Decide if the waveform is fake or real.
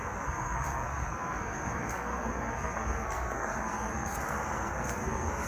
fake